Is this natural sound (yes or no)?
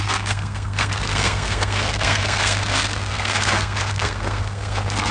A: no